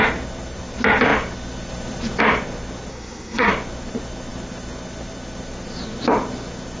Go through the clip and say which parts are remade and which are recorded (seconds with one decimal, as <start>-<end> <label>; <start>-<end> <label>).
0.0-2.9 recorded; 2.9-3.5 remade; 3.5-6.8 recorded